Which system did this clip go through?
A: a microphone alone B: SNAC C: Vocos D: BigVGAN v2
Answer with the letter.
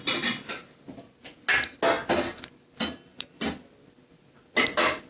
A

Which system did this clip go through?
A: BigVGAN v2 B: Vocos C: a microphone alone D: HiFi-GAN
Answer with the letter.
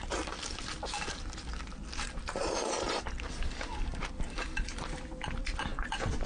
C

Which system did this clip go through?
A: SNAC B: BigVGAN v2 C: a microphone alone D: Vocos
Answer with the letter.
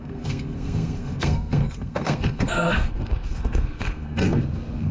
A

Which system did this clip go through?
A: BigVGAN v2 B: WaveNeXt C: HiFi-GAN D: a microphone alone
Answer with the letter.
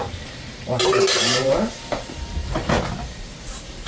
A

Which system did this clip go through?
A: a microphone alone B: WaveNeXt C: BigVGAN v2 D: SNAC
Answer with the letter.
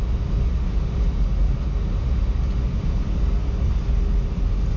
A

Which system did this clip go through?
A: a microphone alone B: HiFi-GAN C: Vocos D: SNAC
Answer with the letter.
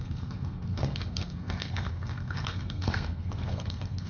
D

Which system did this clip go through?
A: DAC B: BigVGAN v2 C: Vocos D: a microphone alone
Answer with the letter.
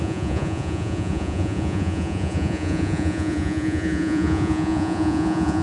C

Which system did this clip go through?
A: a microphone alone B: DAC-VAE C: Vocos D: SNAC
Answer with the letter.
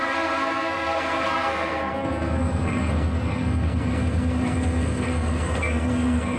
D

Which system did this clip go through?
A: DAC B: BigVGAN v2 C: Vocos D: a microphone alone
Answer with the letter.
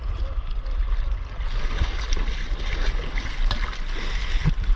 D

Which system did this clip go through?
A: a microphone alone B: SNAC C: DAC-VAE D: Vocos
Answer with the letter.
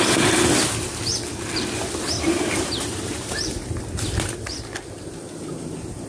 A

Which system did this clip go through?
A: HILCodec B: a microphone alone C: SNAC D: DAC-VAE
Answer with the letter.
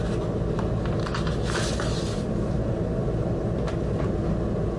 B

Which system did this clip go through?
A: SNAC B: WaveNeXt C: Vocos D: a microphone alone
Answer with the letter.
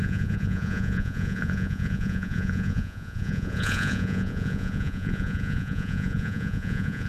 C